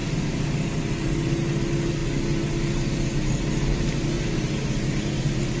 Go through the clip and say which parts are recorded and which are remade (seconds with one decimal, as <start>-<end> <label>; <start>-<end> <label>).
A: 0.0-5.6 recorded